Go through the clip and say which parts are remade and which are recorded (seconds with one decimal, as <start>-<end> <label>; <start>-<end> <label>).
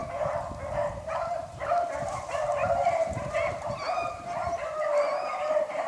0.0-0.9 recorded; 0.9-4.5 remade; 4.5-5.3 recorded; 5.3-5.9 remade